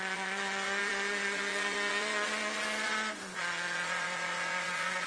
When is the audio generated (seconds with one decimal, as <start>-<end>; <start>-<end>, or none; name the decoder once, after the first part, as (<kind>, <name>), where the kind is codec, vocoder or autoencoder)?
0.0-5.1 (vocoder, Vocos)